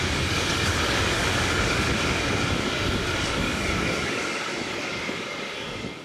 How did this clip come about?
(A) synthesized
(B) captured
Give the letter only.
A